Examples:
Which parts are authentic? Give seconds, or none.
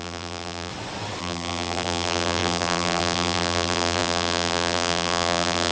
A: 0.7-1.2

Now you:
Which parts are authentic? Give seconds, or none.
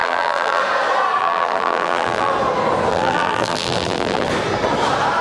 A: 0.6-1.2; 2.3-2.9; 4.3-5.2